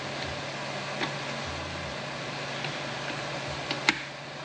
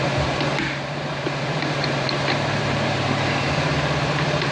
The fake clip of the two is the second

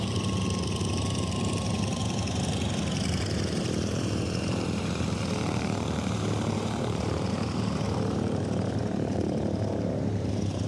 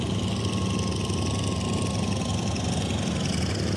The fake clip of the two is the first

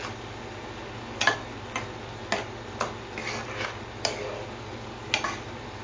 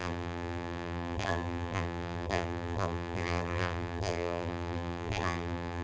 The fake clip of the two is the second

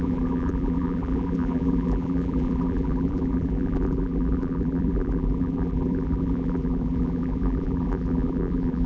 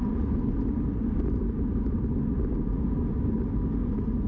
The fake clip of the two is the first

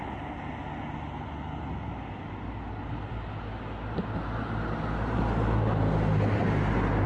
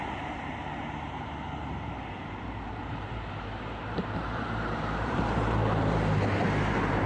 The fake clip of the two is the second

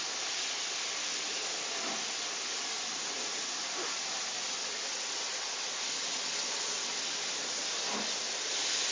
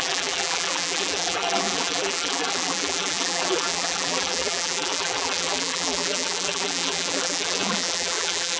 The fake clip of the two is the second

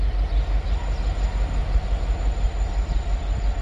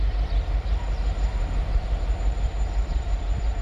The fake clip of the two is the second